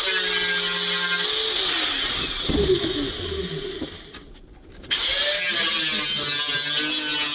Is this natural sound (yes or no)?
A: yes